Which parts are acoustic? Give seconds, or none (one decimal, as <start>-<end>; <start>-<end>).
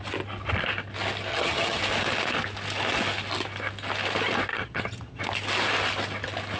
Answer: 0.0-1.3; 1.8-4.5; 5.2-6.6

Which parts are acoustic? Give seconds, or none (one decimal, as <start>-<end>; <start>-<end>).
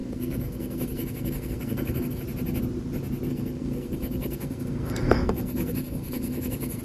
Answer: 2.2-3.3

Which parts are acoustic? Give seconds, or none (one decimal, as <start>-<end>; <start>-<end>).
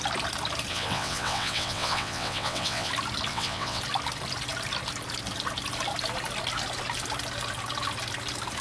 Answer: 0.0-0.7; 2.9-3.3; 3.8-8.6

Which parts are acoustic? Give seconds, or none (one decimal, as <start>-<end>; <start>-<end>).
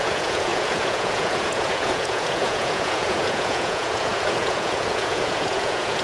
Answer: none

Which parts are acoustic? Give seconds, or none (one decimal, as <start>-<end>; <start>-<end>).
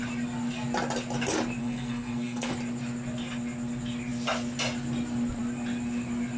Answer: 0.0-1.6; 2.5-6.4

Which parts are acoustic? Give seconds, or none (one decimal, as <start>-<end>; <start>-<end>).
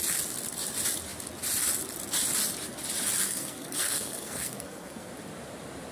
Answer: 0.0-3.2; 5.1-5.9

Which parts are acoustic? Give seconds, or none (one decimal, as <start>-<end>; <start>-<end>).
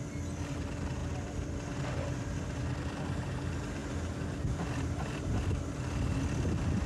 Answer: 0.0-6.9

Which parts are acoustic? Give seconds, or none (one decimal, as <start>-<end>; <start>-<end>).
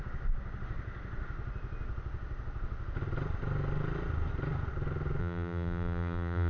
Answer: 0.0-5.2